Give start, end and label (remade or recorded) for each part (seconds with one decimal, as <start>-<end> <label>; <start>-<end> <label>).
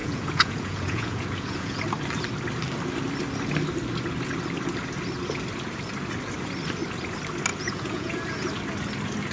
0.0-1.8 remade; 1.8-7.5 recorded; 7.5-8.4 remade; 8.4-9.3 recorded